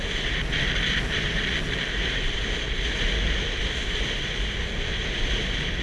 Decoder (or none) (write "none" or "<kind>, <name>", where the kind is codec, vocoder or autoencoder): none